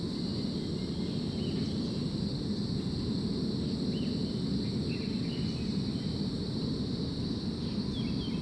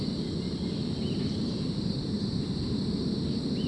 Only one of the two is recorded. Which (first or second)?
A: first